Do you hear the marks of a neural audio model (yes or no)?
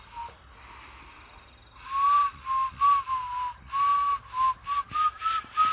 no